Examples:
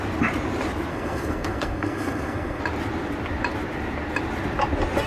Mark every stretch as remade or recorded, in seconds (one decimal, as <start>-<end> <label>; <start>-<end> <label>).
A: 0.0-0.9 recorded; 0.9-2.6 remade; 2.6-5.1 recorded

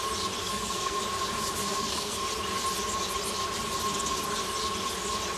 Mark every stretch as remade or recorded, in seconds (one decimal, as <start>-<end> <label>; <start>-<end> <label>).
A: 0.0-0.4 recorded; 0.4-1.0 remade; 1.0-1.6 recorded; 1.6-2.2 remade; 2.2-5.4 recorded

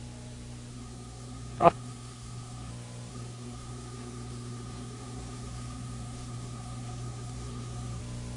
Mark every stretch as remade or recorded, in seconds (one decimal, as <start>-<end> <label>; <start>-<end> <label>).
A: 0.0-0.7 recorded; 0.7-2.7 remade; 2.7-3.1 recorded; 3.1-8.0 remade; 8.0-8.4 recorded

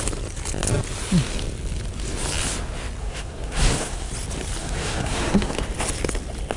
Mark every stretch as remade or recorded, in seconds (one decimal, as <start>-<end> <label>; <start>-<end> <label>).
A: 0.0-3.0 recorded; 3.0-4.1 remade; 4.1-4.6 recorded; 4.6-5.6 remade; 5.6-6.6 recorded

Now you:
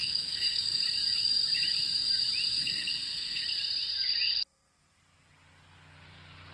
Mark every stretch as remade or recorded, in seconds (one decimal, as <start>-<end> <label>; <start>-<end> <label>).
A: 0.0-0.8 remade; 0.8-2.5 recorded; 2.5-3.4 remade; 3.4-6.5 recorded

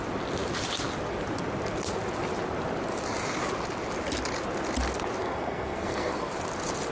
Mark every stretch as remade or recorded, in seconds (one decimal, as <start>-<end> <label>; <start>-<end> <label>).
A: 0.0-5.2 recorded; 5.2-6.3 remade; 6.3-6.9 recorded

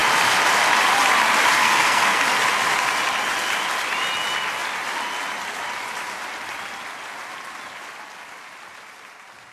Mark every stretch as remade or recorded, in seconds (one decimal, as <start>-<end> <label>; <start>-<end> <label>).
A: 0.0-1.5 recorded; 1.5-2.2 remade; 2.2-9.5 recorded

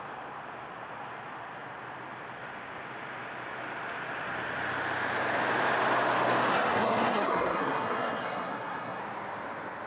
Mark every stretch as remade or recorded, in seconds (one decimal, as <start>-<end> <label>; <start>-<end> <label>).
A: 0.0-6.5 recorded; 6.5-9.0 remade; 9.0-9.9 recorded